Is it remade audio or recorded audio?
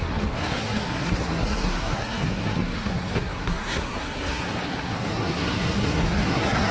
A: remade